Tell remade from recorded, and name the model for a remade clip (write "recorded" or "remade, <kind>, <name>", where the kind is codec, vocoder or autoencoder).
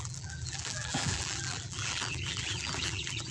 remade, vocoder, BigVGAN v2